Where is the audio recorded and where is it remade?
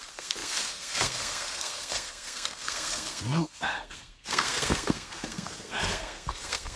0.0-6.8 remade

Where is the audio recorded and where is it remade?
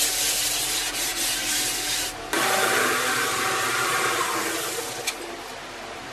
0.0-6.1 recorded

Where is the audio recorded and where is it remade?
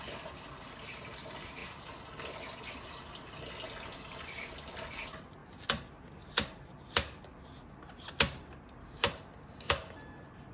0.0-10.5 recorded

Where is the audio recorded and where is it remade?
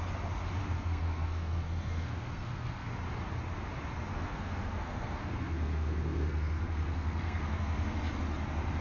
0.0-0.6 recorded; 0.6-2.9 remade; 2.9-4.1 recorded; 4.1-8.0 remade; 8.0-8.8 recorded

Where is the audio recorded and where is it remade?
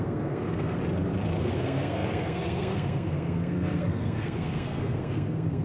0.0-0.8 remade; 0.8-1.4 recorded; 1.4-5.6 remade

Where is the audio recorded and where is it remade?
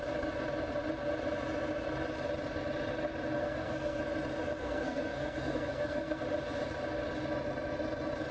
0.0-3.4 recorded; 3.4-4.0 remade; 4.0-4.6 recorded; 4.6-6.2 remade; 6.2-8.3 recorded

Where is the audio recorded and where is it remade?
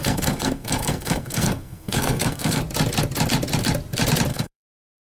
0.0-2.6 remade; 2.6-4.3 recorded; 4.3-5.0 remade